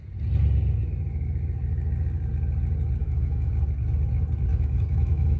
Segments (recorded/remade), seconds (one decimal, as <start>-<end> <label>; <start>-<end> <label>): 0.0-3.0 recorded; 3.0-3.5 remade; 3.5-4.5 recorded; 4.5-5.4 remade